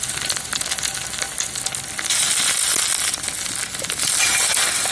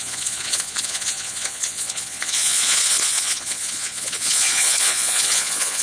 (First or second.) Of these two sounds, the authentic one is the first